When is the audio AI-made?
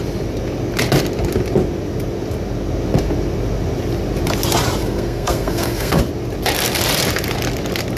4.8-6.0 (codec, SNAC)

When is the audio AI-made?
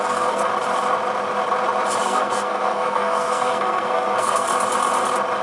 0.0-0.5 (codec, SNAC); 2.0-4.5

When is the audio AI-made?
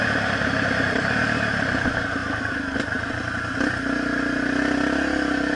none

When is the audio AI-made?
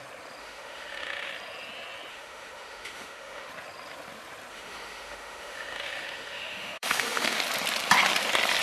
0.4-1.3 (autoencoder, DAC-VAE); 2.1-3.5; 4.5-7.4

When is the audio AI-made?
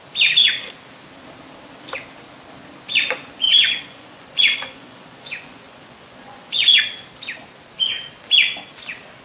2.9-6.9 (vocoder, Vocos)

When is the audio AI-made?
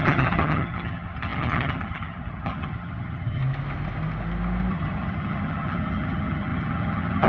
0.0-3.4 (vocoder, HiFi-GAN); 4.7-7.3